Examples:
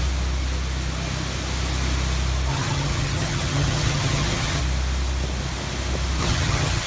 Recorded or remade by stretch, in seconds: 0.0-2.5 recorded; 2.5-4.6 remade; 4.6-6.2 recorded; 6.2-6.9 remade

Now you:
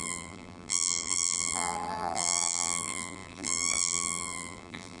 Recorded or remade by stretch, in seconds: 0.0-5.0 remade

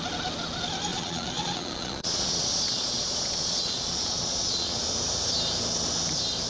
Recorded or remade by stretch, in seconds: 0.0-0.9 recorded; 0.9-4.8 remade; 4.8-6.5 recorded

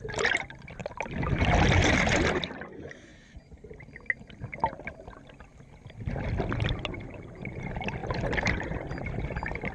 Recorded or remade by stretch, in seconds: 0.0-9.7 recorded